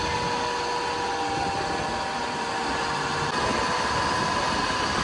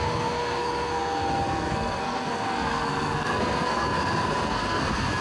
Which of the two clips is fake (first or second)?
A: second